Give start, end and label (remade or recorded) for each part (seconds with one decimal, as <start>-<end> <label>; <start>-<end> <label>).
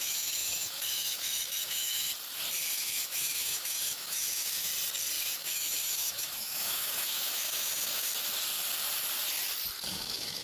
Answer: 0.0-2.1 remade; 2.1-2.7 recorded; 2.7-4.7 remade; 4.7-5.2 recorded; 5.2-8.1 remade; 8.1-9.9 recorded; 9.9-10.4 remade